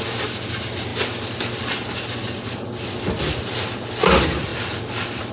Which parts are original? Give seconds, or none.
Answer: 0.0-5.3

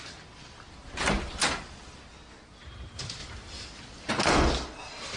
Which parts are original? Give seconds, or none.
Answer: 0.0-5.2

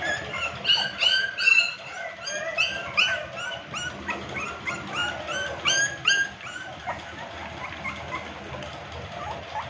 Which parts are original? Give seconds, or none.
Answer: 0.0-9.7

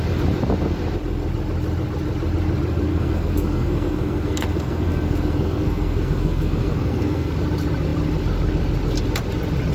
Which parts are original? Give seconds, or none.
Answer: 0.0-2.9; 7.3-9.7